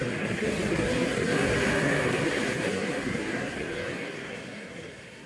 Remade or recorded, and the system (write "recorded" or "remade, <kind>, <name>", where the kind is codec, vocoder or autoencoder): remade, codec, SNAC